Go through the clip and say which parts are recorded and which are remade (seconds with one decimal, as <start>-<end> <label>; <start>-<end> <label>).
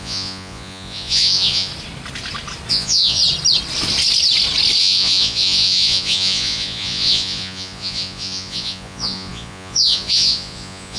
0.0-1.7 remade; 1.7-2.7 recorded; 2.7-3.2 remade; 3.2-4.8 recorded; 4.8-11.0 remade